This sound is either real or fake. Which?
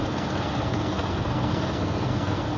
fake